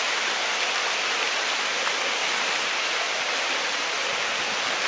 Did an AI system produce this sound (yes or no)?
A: no